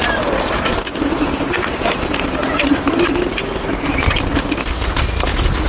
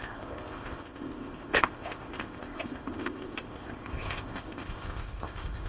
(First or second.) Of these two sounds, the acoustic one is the first